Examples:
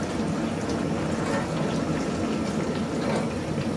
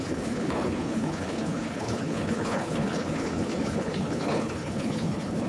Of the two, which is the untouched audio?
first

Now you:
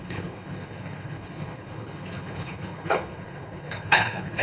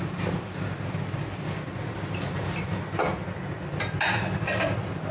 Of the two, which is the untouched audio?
second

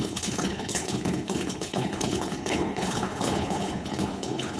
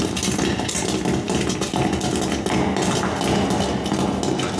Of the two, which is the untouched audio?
second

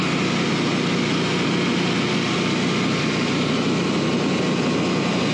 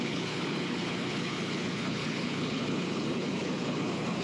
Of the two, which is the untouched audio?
first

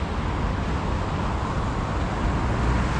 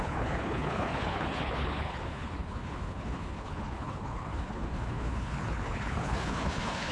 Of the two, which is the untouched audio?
first